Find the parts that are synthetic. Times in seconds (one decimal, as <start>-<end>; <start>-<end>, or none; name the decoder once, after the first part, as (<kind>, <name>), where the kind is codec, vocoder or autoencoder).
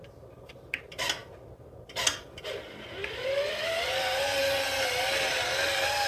none